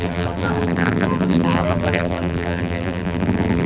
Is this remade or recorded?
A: remade